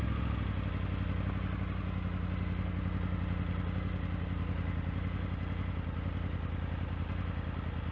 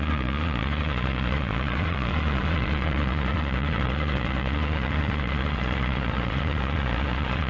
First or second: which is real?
first